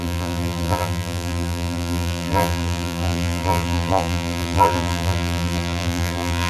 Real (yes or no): no